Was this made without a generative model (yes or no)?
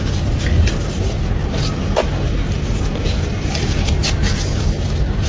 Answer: yes